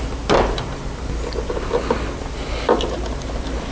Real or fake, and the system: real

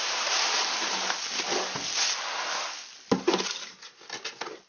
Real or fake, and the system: real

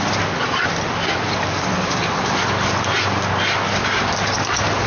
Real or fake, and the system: real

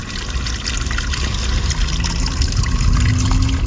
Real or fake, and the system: real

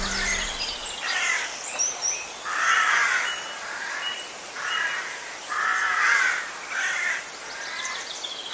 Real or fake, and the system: real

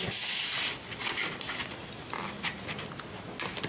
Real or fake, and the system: real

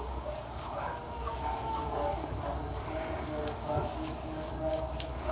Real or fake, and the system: fake, codec, DAC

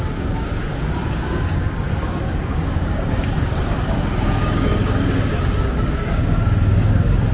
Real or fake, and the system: fake, codec, DAC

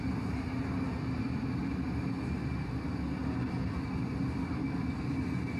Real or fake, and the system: real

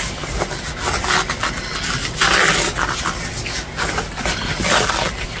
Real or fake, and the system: real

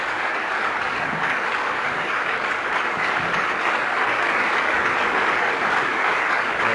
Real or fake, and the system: fake, codec, DAC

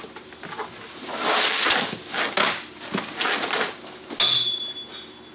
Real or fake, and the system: real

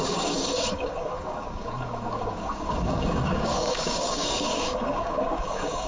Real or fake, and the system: fake, codec, DAC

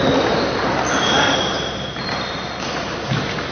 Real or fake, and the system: real